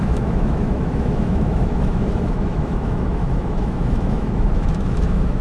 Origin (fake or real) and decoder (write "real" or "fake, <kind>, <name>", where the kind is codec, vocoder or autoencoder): fake, autoencoder, DAC-VAE